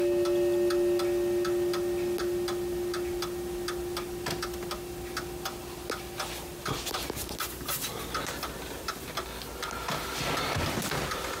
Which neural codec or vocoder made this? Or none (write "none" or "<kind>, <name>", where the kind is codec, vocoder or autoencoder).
none